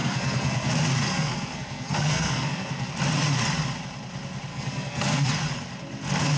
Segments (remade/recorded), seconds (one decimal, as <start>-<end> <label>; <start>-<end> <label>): 0.0-0.7 remade; 0.7-1.1 recorded; 1.1-2.9 remade; 2.9-4.5 recorded; 4.5-5.3 remade; 5.3-6.4 recorded